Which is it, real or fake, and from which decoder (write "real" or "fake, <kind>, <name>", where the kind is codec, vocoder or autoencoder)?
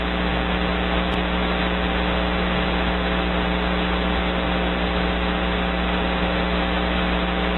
real